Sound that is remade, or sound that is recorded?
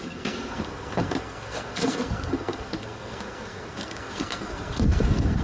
remade